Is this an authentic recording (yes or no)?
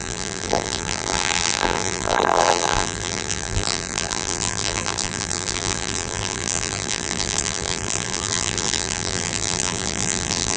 no